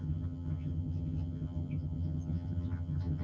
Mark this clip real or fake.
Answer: fake